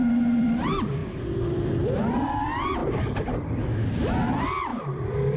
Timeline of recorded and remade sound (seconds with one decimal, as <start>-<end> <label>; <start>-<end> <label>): 0.0-2.8 remade; 2.8-4.1 recorded; 4.1-5.4 remade